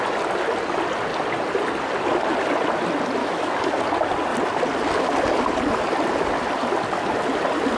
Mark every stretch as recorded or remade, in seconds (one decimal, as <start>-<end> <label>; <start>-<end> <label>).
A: 0.0-3.2 recorded; 3.2-3.8 remade; 3.8-7.8 recorded